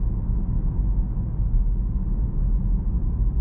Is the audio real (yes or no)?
yes